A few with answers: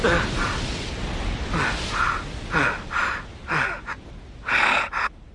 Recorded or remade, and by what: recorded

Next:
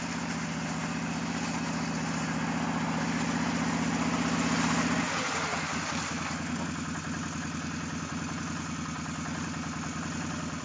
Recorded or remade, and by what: recorded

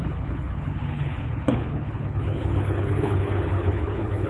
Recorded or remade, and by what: remade, codec, HILCodec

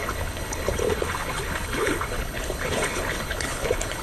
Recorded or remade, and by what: remade, codec, HILCodec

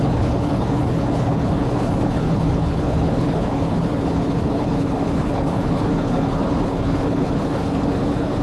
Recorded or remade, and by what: remade, codec, HILCodec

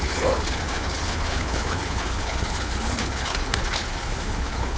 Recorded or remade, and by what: remade, codec, HILCodec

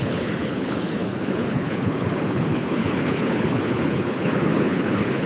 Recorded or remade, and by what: remade, codec, HILCodec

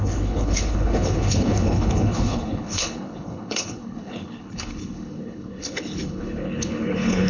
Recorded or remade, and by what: remade, codec, HILCodec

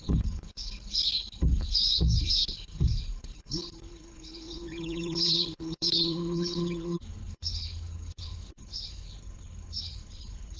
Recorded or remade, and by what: remade, codec, HILCodec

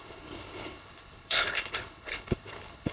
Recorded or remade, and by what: remade, codec, HILCodec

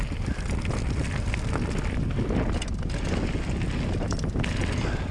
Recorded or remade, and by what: recorded